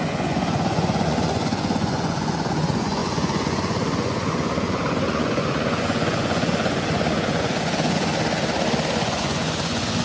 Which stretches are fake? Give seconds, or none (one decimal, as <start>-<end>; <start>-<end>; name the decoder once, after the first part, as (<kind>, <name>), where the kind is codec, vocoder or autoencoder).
0.0-8.1 (vocoder, Vocos); 8.9-10.0